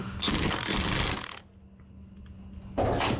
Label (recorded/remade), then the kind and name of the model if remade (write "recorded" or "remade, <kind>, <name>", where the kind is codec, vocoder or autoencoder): recorded